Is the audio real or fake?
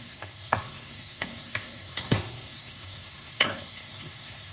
fake